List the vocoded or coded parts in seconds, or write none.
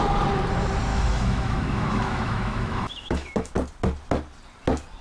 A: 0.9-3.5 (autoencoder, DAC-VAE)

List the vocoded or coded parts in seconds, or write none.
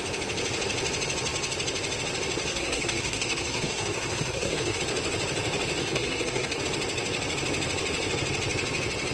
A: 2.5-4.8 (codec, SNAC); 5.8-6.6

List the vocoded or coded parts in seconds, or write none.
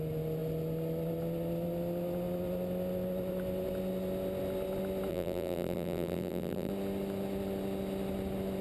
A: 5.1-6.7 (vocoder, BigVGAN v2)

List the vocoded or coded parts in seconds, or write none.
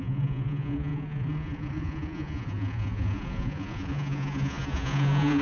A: 0.0-5.4 (vocoder, Vocos)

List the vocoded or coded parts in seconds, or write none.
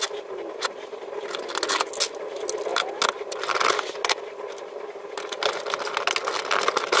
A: none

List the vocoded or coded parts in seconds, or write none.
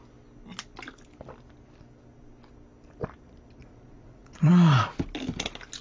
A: 3.6-4.5 (vocoder, Vocos)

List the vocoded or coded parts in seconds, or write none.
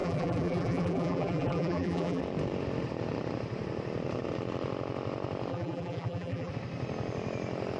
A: 0.0-2.2 (vocoder, BigVGAN v2); 5.5-6.5